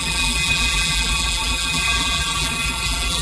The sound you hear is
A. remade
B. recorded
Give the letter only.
A